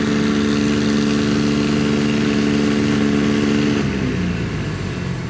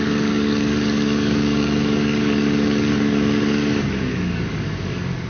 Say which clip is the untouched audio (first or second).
first